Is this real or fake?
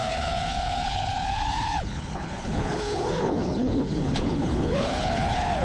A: fake